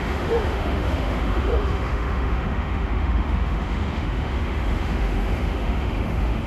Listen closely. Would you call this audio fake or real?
fake